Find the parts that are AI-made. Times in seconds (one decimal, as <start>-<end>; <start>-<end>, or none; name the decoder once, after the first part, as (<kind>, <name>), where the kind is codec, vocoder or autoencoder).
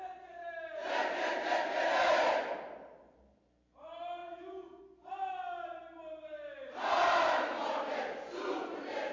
4.2-4.8 (vocoder, Vocos)